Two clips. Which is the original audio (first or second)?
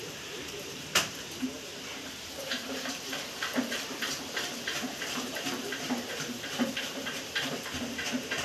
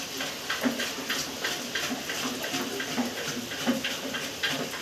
second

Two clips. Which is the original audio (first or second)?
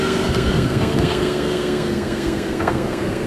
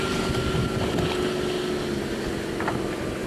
second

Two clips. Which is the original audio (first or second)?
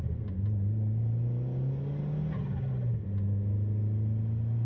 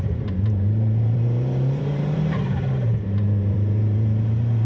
first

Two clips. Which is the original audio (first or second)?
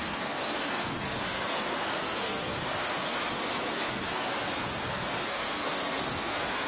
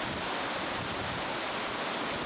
second